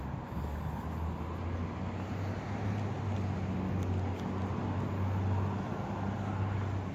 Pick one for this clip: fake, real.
real